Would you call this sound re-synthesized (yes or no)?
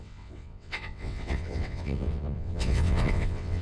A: yes